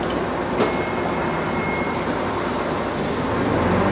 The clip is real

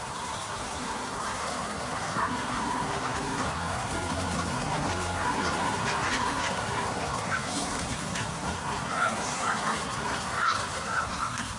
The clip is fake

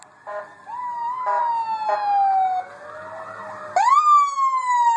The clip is real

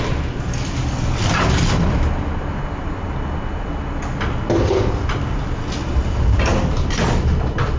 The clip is real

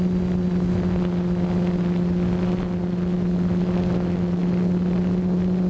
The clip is real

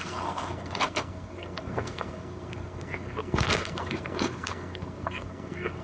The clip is fake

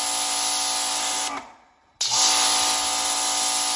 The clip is real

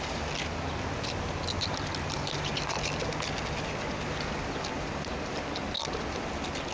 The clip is real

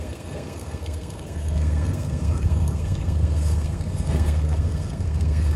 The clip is fake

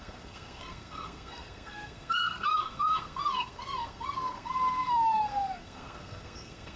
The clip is fake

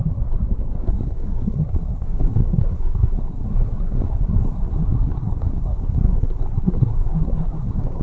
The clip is fake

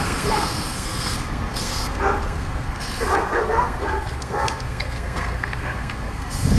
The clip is fake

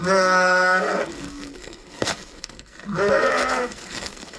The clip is fake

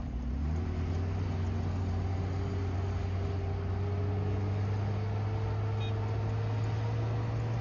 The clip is real